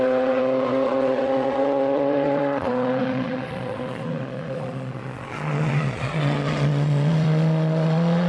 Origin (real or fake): fake